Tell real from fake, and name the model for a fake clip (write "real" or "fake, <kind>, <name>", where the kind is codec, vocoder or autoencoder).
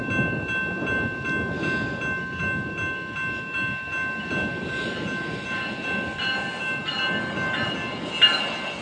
real